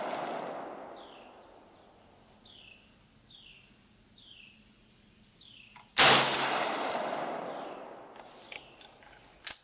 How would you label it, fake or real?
real